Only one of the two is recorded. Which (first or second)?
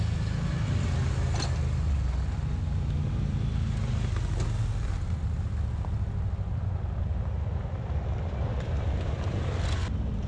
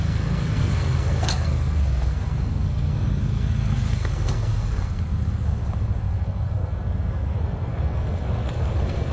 first